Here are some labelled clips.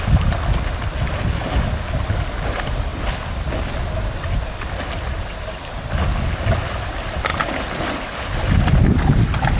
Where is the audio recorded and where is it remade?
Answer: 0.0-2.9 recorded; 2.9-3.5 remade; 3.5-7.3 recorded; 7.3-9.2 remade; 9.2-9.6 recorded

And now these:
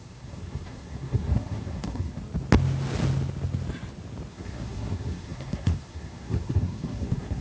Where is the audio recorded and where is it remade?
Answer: 0.0-2.2 remade; 2.2-4.3 recorded; 4.3-7.4 remade

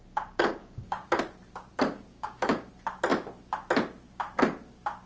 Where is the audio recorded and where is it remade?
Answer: 0.0-0.6 recorded; 0.6-1.2 remade; 1.2-2.1 recorded; 2.1-2.7 remade; 2.7-5.1 recorded

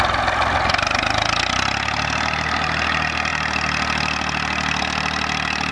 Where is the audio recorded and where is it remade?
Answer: 0.0-5.7 recorded